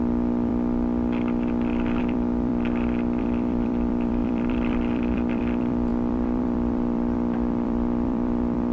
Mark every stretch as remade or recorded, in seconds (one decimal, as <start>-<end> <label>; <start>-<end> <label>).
0.0-0.5 remade; 0.5-2.0 recorded; 2.0-2.5 remade; 2.5-3.2 recorded; 3.2-8.7 remade